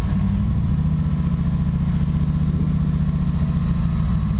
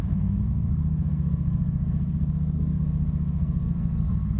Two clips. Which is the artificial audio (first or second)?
second